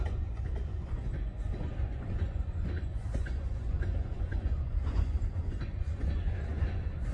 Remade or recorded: remade